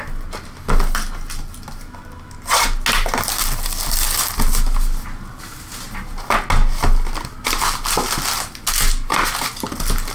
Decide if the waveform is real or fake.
real